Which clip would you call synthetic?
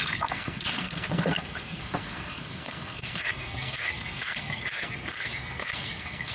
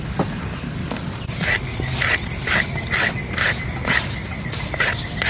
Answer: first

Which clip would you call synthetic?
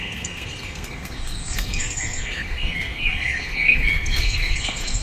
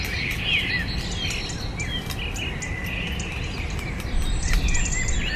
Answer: first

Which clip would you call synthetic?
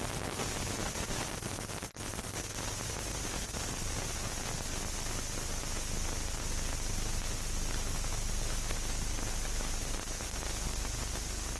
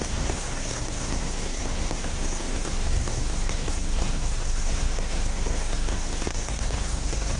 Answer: second